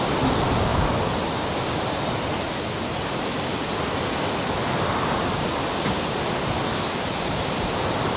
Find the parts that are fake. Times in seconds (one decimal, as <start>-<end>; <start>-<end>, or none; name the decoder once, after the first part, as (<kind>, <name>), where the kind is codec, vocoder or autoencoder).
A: none